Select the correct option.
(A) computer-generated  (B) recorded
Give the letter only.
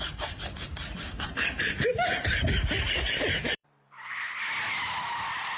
A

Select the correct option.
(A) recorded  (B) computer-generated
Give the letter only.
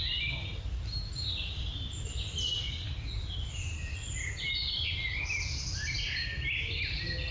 A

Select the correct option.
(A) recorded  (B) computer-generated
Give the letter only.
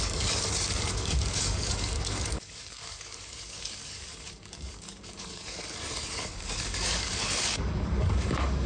B